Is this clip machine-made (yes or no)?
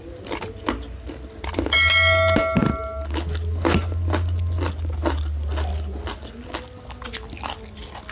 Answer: no